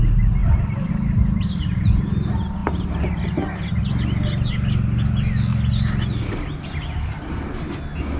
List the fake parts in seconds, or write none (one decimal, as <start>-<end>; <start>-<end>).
0.4-0.9